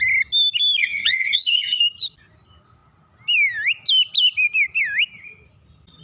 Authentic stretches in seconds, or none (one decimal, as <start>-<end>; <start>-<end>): 0.0-0.8; 1.8-6.0